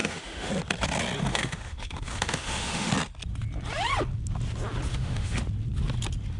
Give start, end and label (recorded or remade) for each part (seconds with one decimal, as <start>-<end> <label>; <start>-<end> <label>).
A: 0.0-0.5 remade; 0.5-1.3 recorded; 1.3-2.9 remade; 2.9-4.9 recorded; 4.9-5.4 remade; 5.4-6.4 recorded